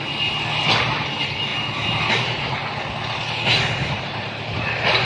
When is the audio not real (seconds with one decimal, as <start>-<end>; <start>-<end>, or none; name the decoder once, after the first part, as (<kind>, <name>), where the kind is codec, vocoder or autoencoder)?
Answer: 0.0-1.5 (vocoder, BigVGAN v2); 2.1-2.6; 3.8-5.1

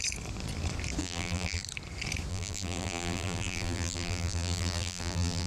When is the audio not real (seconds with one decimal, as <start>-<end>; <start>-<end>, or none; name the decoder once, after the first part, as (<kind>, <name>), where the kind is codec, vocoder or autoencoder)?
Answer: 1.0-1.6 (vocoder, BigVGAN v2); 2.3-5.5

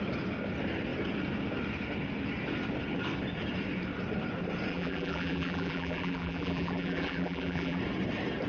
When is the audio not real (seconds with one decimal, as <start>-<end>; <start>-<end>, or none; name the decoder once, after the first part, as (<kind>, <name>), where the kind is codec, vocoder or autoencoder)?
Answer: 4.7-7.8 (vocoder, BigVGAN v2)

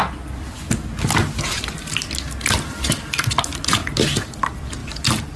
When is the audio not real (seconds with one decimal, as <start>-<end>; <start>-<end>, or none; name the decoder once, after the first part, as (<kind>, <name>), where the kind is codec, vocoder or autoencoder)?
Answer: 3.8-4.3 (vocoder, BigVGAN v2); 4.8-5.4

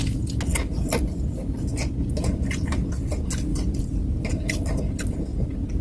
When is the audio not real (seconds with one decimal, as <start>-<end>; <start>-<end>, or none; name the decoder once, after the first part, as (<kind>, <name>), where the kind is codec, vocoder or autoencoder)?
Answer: 3.5-4.8 (vocoder, BigVGAN v2); 5.3-5.8